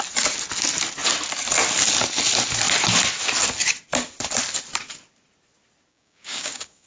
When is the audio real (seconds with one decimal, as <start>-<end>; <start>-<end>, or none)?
0.0-5.9